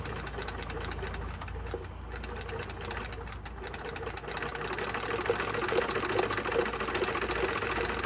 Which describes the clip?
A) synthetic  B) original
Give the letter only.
B